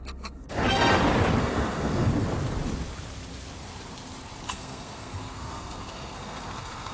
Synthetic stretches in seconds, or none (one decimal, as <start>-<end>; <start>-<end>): 0.0-0.8; 1.4-2.1; 4.5-6.9